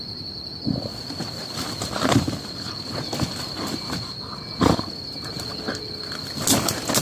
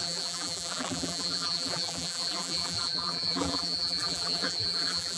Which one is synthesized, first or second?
second